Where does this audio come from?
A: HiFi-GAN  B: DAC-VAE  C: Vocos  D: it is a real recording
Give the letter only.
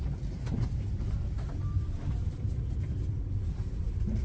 D